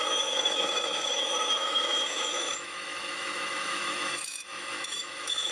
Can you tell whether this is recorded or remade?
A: remade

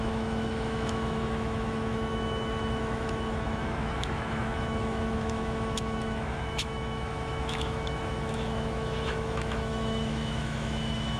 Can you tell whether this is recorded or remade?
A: remade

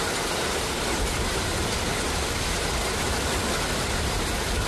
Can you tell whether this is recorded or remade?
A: recorded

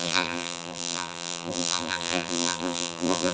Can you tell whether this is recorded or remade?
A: remade